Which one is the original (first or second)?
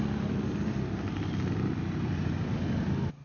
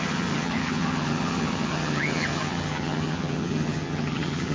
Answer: first